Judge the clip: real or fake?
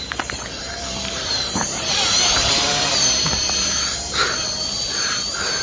fake